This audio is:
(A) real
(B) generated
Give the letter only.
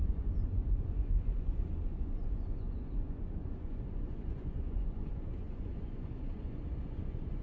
B